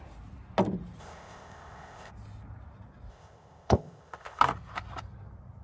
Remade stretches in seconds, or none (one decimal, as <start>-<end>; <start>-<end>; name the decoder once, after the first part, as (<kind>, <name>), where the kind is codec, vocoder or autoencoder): 1.0-2.1 (codec, ZipCodec); 3.1-4.4